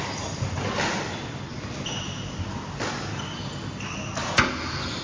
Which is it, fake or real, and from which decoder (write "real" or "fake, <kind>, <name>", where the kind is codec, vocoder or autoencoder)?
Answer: real